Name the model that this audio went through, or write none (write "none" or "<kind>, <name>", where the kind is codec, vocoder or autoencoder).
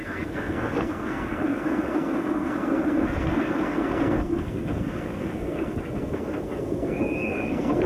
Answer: codec, SNAC